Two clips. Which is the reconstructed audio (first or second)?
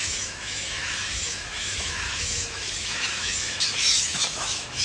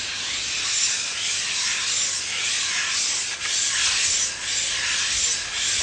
first